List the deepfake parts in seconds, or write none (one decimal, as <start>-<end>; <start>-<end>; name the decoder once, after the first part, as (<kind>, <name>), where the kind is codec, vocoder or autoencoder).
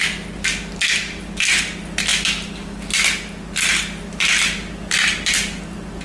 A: none